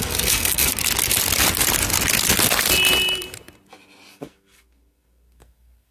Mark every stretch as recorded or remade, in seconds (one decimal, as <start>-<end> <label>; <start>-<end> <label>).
0.0-0.7 remade; 0.7-4.1 recorded; 4.1-5.9 remade